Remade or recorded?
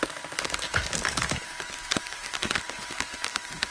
remade